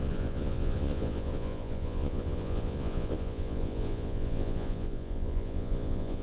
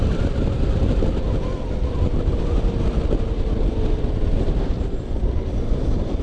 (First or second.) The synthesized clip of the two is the first